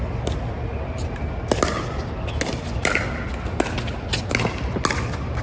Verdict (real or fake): real